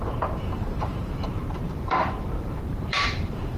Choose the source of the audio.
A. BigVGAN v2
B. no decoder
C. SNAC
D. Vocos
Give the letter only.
A